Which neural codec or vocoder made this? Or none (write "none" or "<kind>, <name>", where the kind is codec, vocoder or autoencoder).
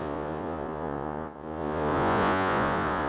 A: vocoder, Vocos